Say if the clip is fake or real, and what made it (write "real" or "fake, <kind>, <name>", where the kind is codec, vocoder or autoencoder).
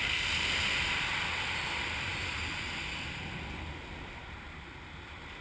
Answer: real